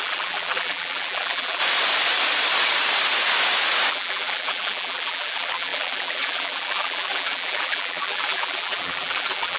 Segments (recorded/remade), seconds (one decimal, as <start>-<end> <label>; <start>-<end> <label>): 0.0-1.6 remade; 1.6-3.9 recorded; 3.9-9.6 remade